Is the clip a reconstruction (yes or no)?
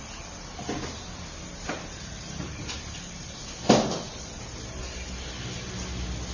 no